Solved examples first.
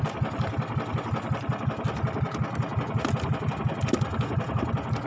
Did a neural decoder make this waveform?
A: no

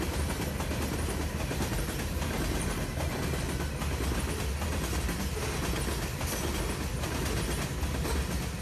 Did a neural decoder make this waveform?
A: no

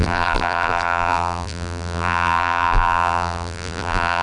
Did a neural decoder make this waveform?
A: yes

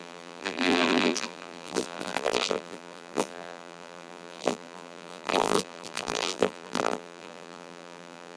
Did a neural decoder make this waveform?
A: yes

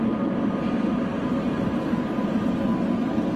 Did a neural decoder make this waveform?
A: no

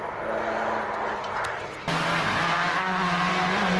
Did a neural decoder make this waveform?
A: no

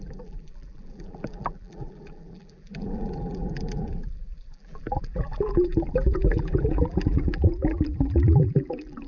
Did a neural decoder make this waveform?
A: yes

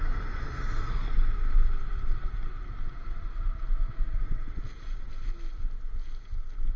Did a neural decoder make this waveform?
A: no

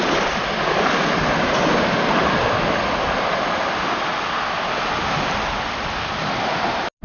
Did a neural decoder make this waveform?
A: no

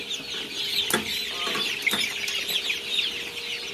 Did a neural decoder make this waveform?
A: no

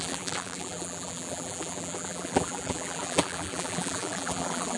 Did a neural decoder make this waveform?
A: yes